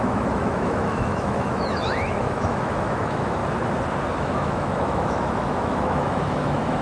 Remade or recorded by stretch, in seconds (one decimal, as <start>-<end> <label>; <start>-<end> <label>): 0.0-3.4 remade; 3.4-4.1 recorded; 4.1-6.8 remade